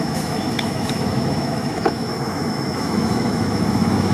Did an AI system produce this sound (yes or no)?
yes